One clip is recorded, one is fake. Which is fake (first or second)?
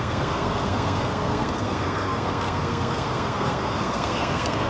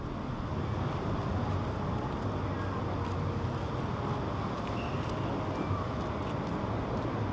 first